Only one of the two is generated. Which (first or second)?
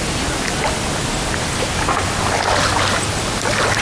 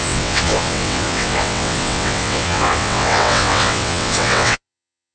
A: second